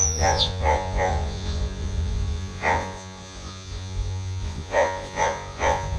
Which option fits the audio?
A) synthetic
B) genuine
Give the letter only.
A